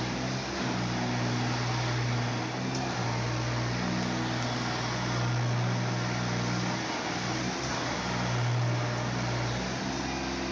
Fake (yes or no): no